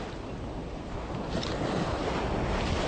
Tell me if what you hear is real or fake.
real